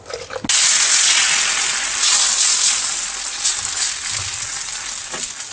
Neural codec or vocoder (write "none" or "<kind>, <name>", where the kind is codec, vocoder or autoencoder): none